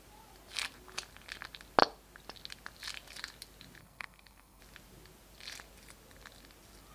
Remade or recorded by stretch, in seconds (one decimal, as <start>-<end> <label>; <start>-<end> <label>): 0.0-3.8 recorded; 3.8-4.6 remade; 4.6-6.9 recorded